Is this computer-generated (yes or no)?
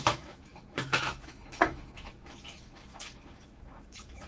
yes